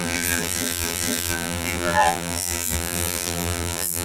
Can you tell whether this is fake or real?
fake